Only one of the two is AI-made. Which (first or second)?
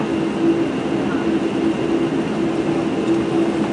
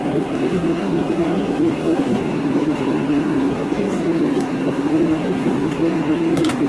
second